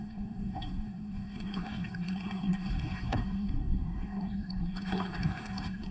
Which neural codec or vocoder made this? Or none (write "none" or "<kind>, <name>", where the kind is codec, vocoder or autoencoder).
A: codec, SNAC